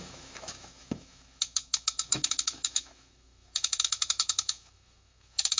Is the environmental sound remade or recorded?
remade